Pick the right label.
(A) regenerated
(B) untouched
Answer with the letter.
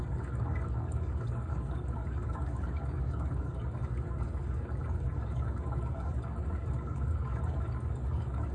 A